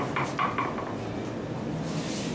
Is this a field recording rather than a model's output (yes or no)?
no